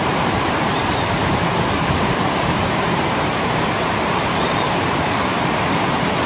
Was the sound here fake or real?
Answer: fake